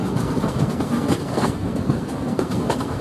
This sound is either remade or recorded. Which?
remade